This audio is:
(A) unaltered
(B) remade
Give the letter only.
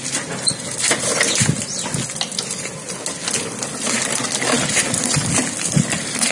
A